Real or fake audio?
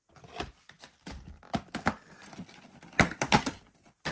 real